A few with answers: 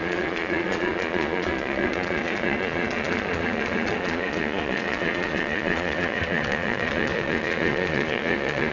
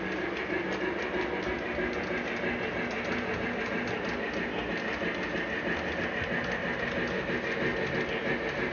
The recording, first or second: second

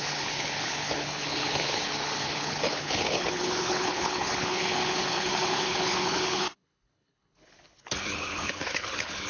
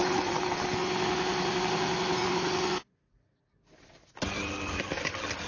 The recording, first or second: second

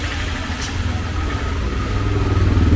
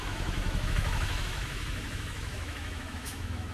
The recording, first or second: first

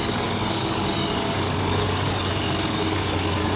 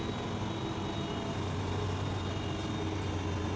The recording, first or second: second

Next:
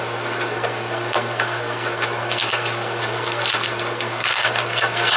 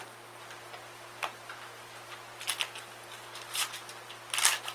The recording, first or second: second